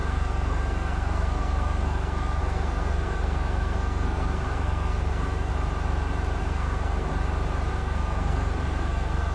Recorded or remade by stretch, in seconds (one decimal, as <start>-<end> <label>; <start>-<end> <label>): 0.0-5.5 remade; 5.5-6.4 recorded; 6.4-7.1 remade; 7.1-7.7 recorded; 7.7-9.3 remade